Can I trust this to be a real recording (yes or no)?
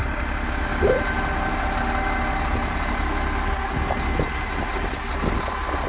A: yes